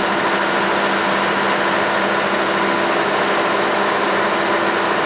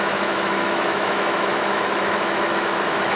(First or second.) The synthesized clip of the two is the second